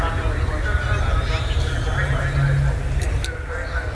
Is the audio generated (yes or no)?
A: no